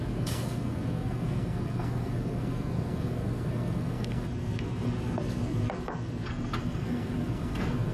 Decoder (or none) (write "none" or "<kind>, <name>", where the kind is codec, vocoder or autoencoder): codec, SNAC